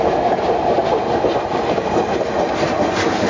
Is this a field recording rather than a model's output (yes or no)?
yes